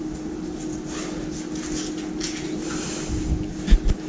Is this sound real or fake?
real